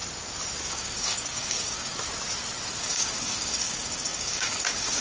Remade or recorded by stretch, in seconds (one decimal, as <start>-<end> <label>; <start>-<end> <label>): 0.0-0.6 recorded; 0.6-1.9 remade; 1.9-2.7 recorded; 2.7-5.0 remade